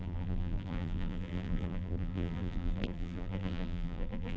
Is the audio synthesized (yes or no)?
yes